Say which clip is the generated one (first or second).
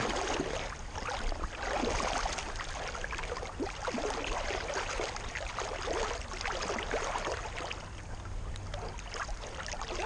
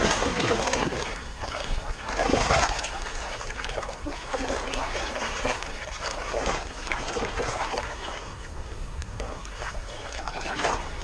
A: second